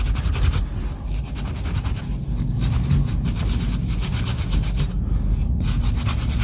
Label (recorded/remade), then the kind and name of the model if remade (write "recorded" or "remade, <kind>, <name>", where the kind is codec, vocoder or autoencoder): recorded